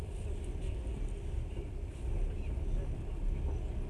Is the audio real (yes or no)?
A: yes